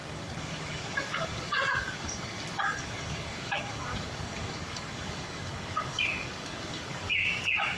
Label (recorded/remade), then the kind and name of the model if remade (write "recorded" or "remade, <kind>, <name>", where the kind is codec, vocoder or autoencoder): remade, codec, DAC